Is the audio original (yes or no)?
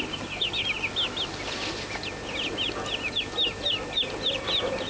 yes